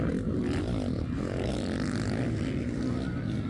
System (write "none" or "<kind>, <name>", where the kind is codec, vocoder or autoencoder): none